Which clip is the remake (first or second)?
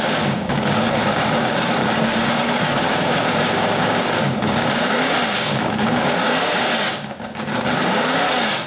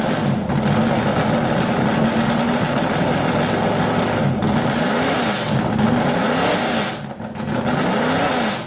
first